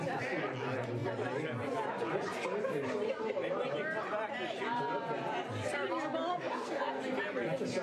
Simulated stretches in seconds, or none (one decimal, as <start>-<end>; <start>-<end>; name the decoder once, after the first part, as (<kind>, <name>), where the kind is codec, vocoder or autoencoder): 6.3-7.0 (codec, SNAC)